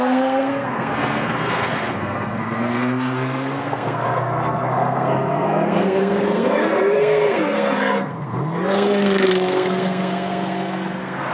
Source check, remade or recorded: remade